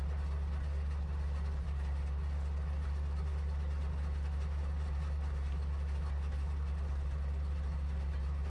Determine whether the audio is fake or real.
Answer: real